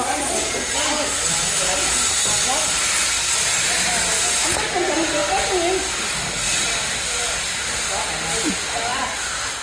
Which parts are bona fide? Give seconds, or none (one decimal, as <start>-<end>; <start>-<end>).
0.0-9.6

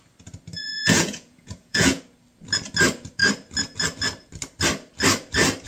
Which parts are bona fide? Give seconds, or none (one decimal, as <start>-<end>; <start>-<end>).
0.0-0.6; 2.0-5.7